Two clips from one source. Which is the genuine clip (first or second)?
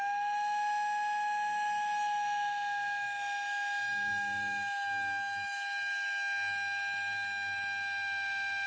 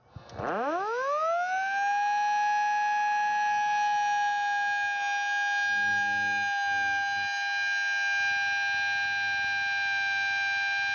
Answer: second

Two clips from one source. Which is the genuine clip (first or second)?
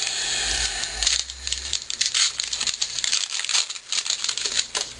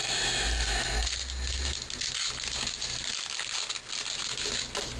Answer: second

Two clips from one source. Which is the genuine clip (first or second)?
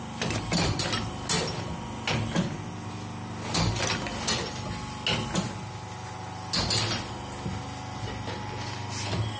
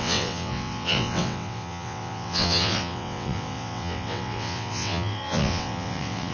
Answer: first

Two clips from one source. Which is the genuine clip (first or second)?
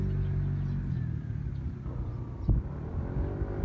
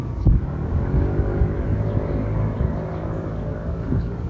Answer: first